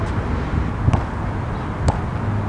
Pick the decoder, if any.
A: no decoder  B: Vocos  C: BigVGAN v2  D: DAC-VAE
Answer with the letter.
A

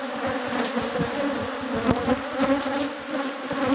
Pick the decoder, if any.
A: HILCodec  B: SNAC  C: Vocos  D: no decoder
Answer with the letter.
D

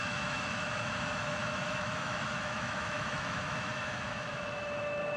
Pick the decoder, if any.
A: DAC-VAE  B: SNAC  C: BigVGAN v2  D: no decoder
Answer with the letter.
A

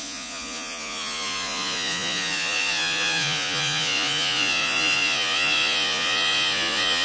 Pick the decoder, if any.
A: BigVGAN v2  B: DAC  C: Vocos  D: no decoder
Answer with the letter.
C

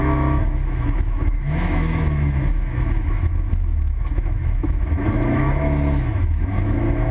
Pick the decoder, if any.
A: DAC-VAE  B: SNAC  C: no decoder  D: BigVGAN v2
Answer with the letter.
A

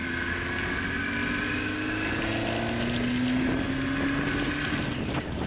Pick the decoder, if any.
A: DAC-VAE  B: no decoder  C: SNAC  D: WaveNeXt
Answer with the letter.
B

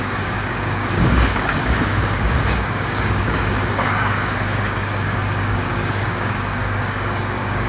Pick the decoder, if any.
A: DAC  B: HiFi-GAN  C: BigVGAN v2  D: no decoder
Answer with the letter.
A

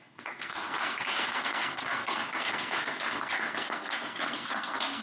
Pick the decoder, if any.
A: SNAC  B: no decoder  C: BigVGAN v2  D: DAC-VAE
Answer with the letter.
A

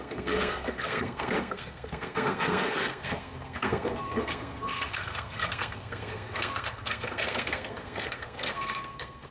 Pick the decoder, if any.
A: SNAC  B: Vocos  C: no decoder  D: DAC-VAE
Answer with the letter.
A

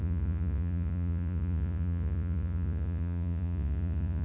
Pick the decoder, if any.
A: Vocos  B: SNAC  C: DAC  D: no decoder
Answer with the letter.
A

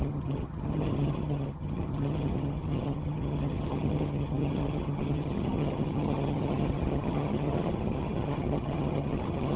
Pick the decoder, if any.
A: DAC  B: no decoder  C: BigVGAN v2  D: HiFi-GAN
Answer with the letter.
D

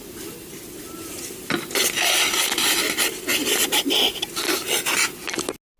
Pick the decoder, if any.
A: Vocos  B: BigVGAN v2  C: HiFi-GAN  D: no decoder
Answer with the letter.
D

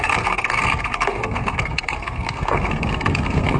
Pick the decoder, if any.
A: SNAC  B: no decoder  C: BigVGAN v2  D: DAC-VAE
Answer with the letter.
A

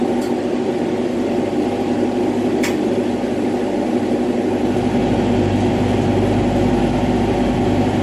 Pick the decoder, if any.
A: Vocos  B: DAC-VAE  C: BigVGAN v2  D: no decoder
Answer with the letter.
D